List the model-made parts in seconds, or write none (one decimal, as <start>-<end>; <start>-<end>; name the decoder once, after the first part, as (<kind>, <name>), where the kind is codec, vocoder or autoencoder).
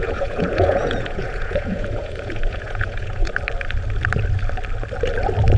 0.0-3.3 (vocoder, Vocos)